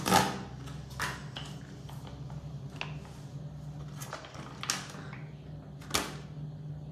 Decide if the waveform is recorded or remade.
recorded